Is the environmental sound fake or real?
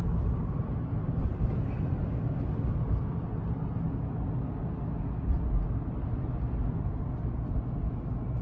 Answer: real